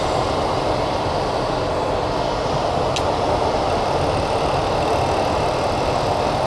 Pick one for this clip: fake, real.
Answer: real